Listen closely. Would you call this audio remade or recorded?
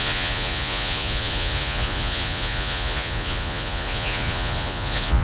remade